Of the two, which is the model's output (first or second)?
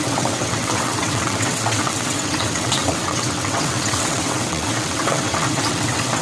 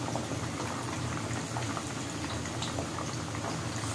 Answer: first